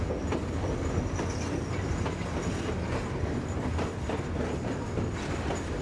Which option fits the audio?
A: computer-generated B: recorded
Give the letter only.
B